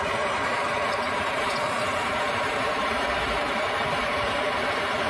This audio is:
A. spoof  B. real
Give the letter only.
A